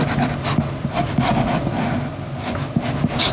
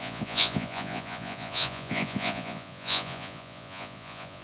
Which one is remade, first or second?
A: second